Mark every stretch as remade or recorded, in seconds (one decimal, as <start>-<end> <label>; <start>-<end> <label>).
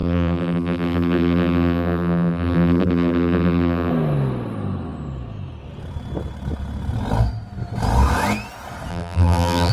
0.0-3.9 remade; 3.9-8.9 recorded; 8.9-9.7 remade